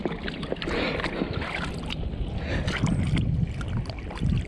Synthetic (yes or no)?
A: no